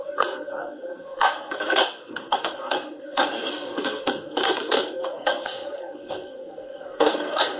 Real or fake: fake